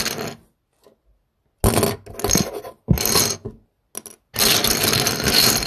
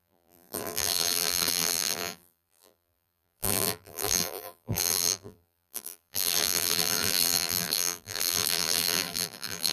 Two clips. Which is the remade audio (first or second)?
second